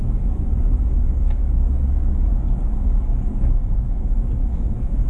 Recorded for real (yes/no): no